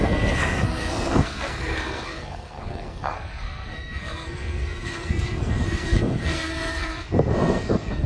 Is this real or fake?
fake